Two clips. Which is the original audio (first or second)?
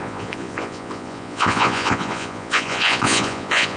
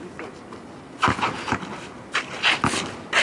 second